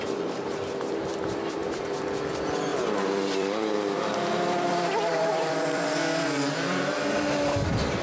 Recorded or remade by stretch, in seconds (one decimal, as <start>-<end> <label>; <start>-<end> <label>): 0.0-8.0 remade